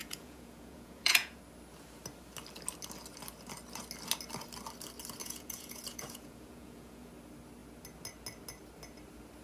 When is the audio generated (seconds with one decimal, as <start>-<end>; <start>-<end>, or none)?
0.0-1.4; 5.2-7.1